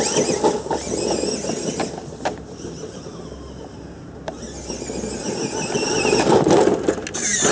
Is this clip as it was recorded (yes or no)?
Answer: yes